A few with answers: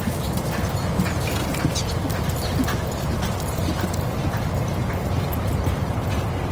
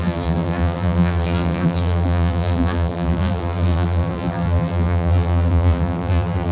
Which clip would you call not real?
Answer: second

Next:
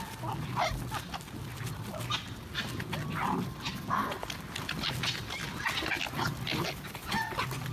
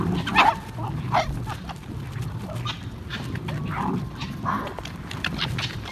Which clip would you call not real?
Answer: second